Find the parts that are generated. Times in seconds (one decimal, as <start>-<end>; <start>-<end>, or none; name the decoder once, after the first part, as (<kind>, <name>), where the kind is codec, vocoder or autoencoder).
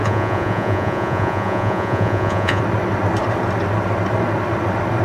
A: 0.0-2.6 (vocoder, Vocos)